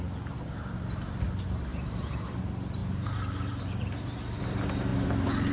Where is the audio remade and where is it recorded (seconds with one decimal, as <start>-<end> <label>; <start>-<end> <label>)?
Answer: 0.0-1.7 recorded; 1.7-2.4 remade; 2.4-2.8 recorded; 2.8-4.5 remade; 4.5-5.5 recorded